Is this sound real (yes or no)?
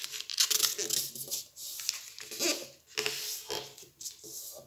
yes